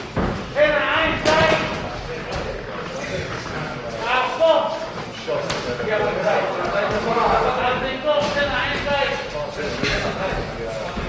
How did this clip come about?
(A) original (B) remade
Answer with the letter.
A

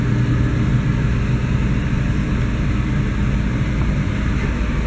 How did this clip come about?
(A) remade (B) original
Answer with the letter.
B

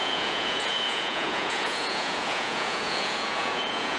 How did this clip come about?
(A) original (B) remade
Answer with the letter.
B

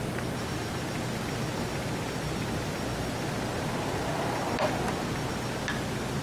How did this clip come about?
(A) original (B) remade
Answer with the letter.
A